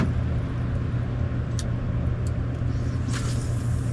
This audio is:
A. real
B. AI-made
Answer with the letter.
A